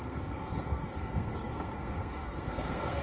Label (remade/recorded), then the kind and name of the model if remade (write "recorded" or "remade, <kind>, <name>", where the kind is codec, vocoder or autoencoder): remade, codec, SNAC